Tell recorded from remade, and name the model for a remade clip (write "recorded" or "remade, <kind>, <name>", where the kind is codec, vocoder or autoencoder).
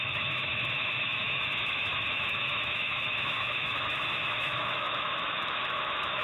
remade, autoencoder, DAC-VAE